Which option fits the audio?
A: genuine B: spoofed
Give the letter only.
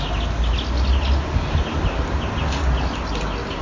A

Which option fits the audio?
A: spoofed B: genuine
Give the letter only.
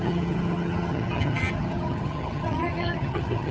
A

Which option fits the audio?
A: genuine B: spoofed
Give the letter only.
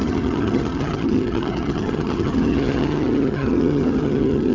B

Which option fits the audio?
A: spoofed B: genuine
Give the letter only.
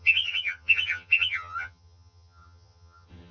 A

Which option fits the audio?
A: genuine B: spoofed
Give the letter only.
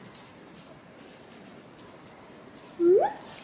A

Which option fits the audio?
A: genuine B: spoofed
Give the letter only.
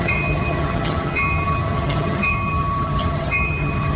B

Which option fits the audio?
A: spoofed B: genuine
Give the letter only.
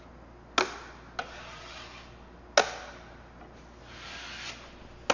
B